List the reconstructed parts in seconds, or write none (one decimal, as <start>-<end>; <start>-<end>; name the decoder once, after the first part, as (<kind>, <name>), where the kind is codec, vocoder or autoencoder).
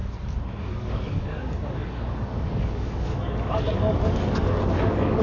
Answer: 0.6-5.2 (codec, DAC)